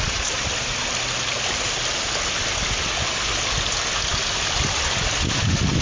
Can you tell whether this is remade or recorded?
recorded